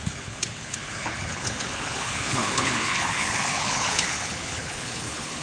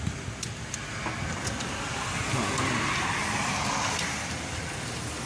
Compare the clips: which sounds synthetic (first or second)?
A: first